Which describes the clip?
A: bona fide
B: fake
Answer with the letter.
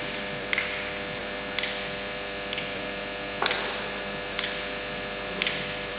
B